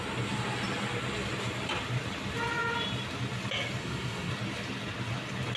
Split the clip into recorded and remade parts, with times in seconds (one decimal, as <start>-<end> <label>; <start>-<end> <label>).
0.0-3.8 recorded; 3.8-4.3 remade; 4.3-5.6 recorded